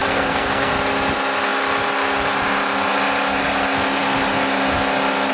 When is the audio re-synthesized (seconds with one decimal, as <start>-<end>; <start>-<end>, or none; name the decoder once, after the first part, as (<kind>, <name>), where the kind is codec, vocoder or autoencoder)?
0.0-0.7 (codec, SNAC)